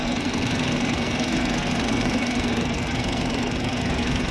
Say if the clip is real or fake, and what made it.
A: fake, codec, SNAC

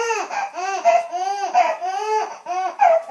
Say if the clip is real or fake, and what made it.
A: fake, vocoder, BigVGAN v2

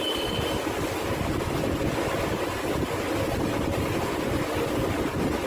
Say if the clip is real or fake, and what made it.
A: real